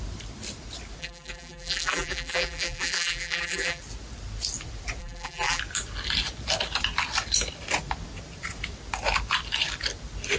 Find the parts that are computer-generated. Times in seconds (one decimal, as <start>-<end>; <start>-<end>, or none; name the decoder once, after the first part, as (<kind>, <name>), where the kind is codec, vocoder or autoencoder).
1.0-3.8 (vocoder, BigVGAN v2); 5.0-5.6